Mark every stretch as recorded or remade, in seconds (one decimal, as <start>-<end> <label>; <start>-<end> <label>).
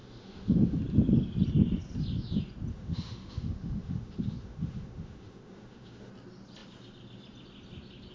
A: 0.0-0.8 remade; 0.8-2.7 recorded; 2.7-6.1 remade; 6.1-8.1 recorded